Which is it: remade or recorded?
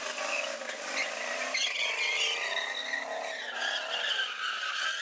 recorded